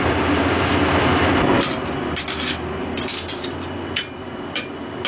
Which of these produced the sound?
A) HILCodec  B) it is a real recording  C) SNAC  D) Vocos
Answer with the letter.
B